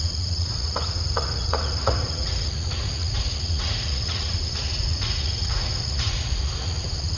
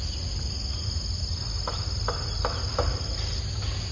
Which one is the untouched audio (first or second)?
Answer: second